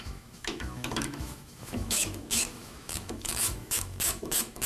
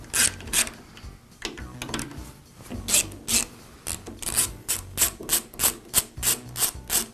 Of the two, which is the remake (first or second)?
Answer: first